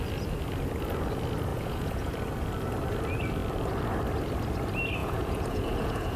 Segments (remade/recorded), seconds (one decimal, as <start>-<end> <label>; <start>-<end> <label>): 0.0-1.5 recorded; 1.5-2.1 remade; 2.1-5.0 recorded; 5.0-6.2 remade